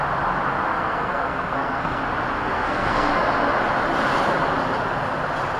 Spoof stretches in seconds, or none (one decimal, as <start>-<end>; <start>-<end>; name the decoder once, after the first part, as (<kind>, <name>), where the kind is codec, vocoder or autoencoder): 0.7-2.0 (codec, SNAC); 2.4-3.1